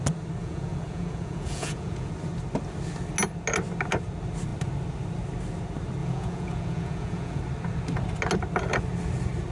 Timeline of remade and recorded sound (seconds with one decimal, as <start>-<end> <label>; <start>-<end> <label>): 0.0-0.4 recorded; 0.4-2.1 remade; 2.1-6.0 recorded; 6.0-7.4 remade; 7.4-9.5 recorded